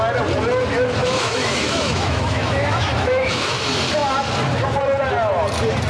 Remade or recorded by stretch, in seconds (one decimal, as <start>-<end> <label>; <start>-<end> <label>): 0.0-1.0 recorded; 1.0-3.6 remade; 3.6-5.9 recorded